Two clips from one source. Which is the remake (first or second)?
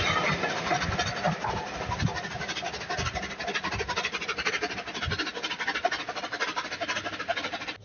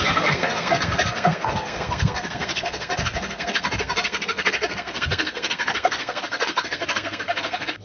second